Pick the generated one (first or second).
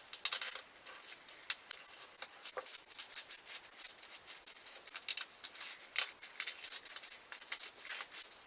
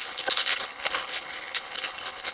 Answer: second